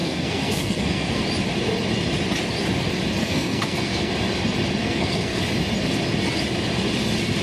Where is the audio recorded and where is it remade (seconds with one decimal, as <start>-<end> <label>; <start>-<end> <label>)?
0.0-1.2 remade; 1.2-3.2 recorded; 3.2-4.1 remade; 4.1-4.8 recorded; 4.8-5.4 remade; 5.4-7.4 recorded